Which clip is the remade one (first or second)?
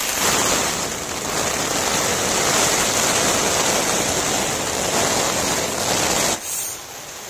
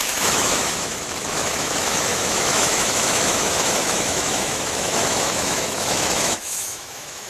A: second